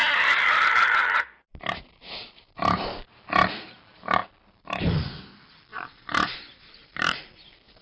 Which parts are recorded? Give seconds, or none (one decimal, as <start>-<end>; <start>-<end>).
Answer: 3.1-4.2; 4.8-5.7